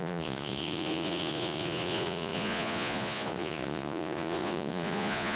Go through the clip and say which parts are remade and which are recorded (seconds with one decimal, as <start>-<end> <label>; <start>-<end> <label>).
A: 0.0-5.4 remade